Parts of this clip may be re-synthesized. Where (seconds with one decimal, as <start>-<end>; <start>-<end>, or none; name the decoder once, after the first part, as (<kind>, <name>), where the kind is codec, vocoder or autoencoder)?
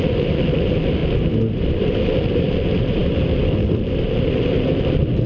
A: 0.0-1.0 (vocoder, BigVGAN v2); 1.5-3.0; 3.7-5.3